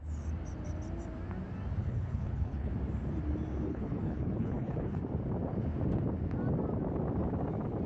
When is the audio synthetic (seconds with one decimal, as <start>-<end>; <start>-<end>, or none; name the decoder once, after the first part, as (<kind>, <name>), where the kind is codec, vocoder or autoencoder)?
1.8-2.7 (codec, HILCodec); 3.7-5.0